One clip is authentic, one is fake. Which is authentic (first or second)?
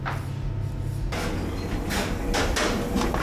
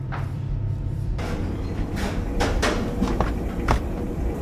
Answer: first